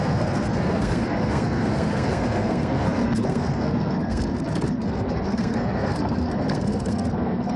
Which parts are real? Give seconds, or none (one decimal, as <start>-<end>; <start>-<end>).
none